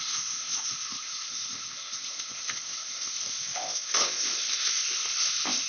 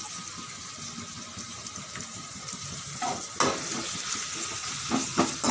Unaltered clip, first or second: second